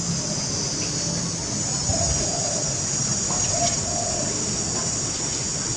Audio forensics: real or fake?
real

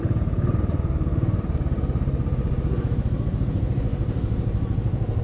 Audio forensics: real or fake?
fake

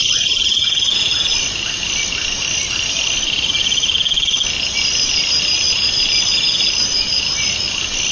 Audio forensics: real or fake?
real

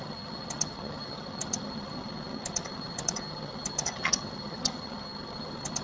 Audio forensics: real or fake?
fake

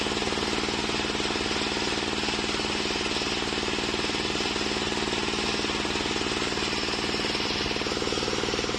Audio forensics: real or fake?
real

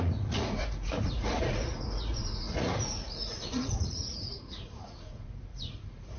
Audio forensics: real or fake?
fake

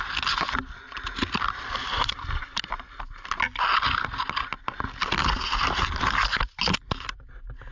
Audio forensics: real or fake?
real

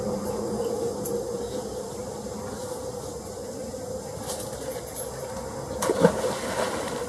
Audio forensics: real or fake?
real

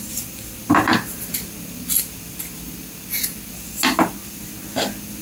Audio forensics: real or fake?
real